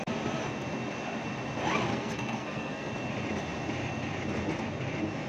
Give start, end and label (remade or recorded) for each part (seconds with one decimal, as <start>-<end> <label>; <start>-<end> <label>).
0.0-1.9 recorded; 1.9-2.9 remade; 2.9-5.3 recorded